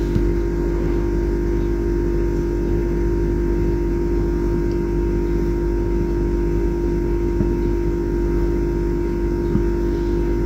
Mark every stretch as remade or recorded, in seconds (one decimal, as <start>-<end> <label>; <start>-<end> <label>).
0.0-10.5 recorded